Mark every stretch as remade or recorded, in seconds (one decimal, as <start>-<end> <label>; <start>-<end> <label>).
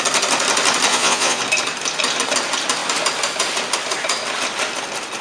0.0-0.9 recorded; 0.9-1.4 remade; 1.4-5.2 recorded